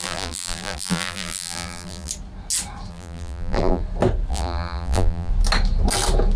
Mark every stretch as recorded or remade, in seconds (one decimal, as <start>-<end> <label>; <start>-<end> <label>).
0.0-2.1 remade; 2.1-2.9 recorded; 2.9-3.8 remade; 3.8-4.3 recorded; 4.3-5.3 remade; 5.3-6.4 recorded